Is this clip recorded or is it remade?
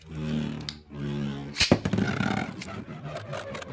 recorded